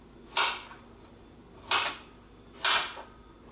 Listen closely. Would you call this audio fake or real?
real